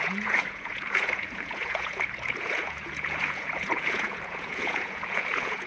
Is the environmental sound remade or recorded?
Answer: remade